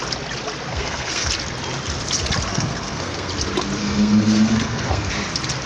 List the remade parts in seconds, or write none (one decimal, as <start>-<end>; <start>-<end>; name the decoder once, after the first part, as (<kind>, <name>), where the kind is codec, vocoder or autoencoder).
0.7-1.3 (codec, SNAC); 2.5-3.3; 3.8-5.1